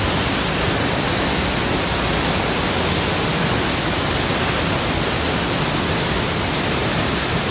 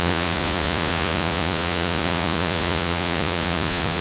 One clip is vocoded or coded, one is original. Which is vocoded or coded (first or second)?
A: second